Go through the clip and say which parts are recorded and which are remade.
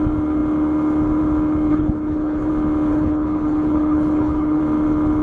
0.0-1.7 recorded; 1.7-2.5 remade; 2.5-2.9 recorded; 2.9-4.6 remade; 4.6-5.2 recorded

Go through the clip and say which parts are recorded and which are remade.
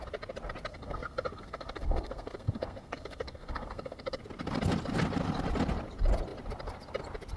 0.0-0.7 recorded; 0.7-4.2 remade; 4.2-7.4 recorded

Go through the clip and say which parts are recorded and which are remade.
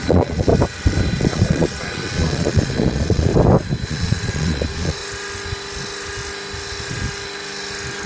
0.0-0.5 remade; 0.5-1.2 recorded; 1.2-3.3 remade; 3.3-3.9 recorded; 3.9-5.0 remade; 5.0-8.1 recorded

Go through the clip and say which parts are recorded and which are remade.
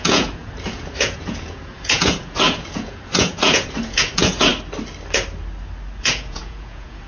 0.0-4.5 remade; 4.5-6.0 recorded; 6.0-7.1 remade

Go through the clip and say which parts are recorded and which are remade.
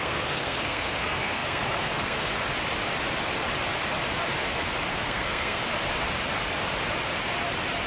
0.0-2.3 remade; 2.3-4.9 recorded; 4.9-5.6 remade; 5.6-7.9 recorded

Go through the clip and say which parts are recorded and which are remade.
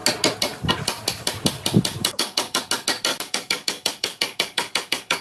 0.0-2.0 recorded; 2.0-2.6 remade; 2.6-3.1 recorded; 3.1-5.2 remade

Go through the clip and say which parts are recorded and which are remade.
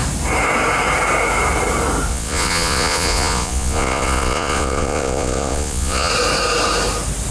0.0-2.1 recorded; 2.1-6.1 remade; 6.1-7.3 recorded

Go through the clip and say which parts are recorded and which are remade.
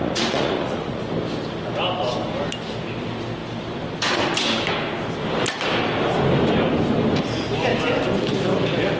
0.0-1.0 remade; 1.0-9.0 recorded